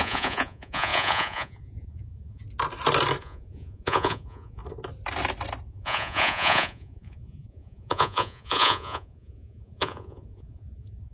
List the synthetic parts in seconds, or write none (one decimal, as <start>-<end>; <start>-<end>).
0.0-2.4; 3.2-4.6; 5.7-11.1